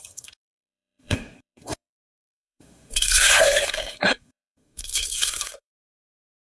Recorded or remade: remade